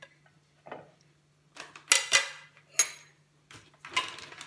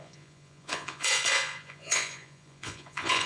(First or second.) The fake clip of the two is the second